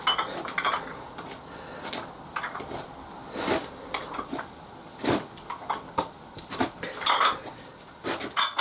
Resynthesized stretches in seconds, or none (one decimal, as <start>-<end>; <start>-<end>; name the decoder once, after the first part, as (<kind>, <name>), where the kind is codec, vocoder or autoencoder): none